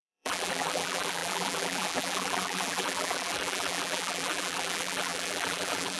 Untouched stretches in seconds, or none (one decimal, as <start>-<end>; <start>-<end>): none